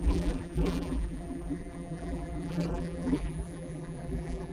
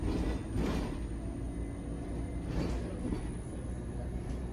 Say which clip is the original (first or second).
second